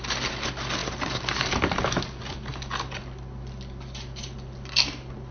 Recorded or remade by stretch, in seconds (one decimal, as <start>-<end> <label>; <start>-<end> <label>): 0.0-5.3 recorded